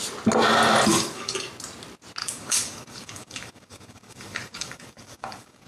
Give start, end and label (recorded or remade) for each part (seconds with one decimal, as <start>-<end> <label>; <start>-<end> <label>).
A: 0.0-0.9 recorded; 0.9-1.5 remade; 1.5-2.2 recorded; 2.2-5.7 remade